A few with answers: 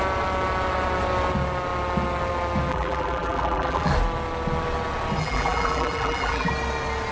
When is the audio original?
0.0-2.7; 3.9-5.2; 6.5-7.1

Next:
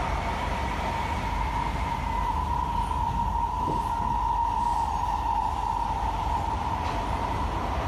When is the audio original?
0.0-7.9

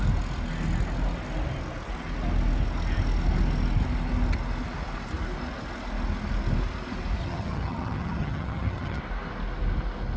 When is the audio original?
0.0-7.2; 9.0-10.2

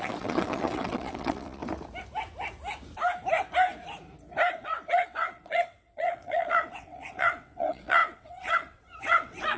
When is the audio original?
1.6-4.5

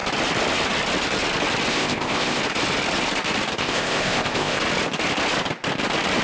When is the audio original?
0.0-1.7; 2.4-3.6; 4.6-6.2

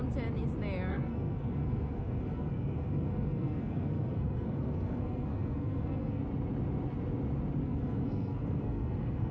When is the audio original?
0.0-0.9; 6.2-7.6

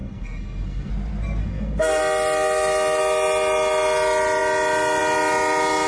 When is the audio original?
0.9-1.4; 2.0-5.9

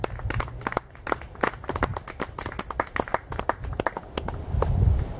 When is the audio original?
0.0-5.2